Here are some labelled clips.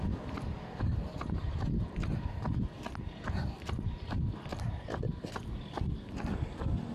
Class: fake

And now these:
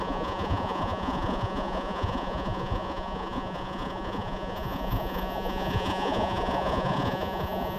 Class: fake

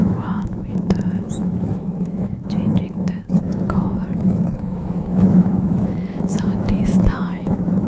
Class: fake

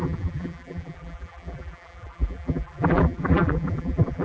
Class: fake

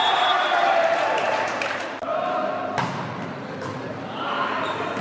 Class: fake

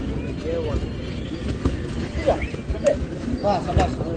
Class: real